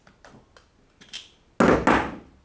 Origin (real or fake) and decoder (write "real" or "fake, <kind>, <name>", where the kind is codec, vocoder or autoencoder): real